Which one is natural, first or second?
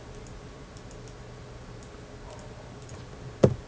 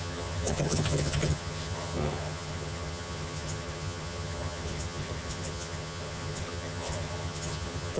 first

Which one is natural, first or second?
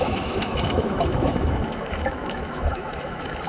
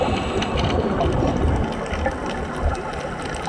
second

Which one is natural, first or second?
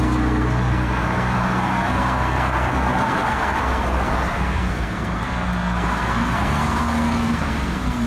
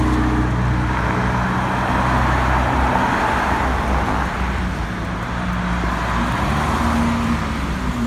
second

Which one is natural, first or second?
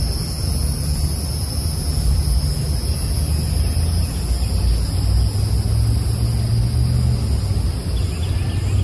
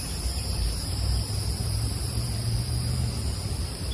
first